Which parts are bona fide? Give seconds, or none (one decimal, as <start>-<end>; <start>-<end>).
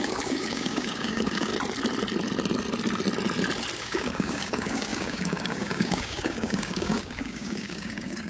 1.5-3.8